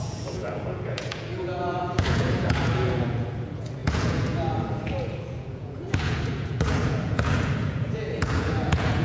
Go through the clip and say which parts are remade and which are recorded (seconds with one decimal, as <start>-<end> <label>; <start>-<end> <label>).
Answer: 0.0-9.0 remade